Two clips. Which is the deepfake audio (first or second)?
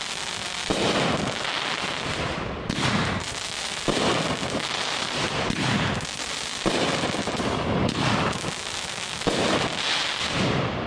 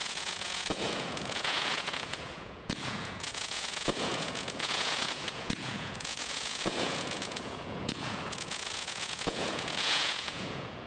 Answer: second